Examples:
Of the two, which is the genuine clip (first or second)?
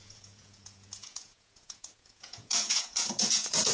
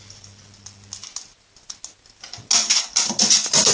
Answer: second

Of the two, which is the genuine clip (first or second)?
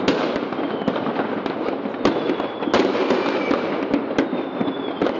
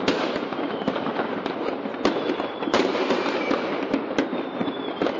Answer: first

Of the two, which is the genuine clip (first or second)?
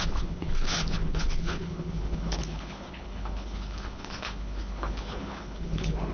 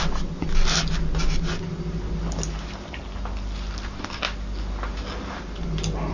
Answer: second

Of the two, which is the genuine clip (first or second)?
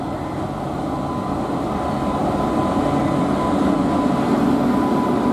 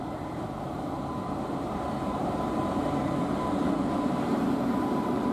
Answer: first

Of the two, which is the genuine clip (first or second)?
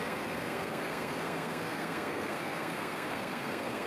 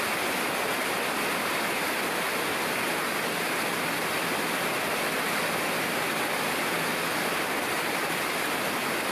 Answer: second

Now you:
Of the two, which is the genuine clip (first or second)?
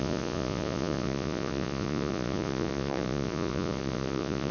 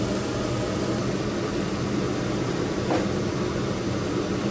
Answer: second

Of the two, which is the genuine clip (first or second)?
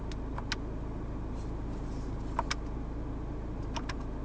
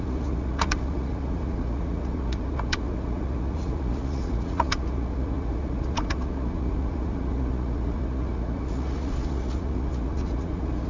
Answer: first